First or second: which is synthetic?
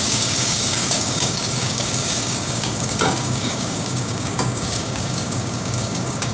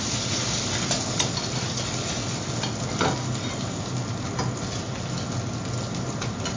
first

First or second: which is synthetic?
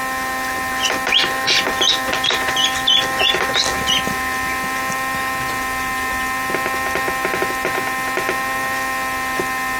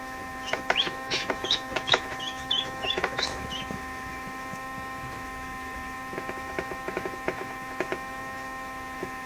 second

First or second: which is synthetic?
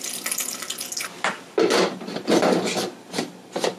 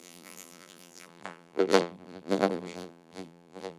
second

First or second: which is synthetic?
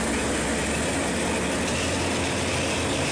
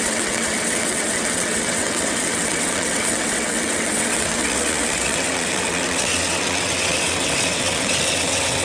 second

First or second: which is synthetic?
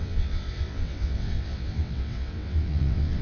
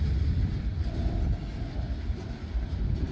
first